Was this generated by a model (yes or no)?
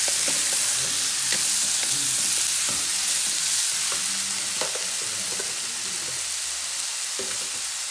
no